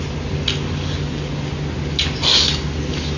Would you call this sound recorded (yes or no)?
yes